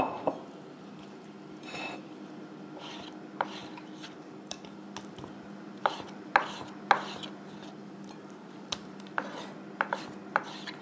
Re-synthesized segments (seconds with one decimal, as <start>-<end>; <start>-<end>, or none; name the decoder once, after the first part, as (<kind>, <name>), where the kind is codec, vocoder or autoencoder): 7.8-9.1 (vocoder, BigVGAN v2)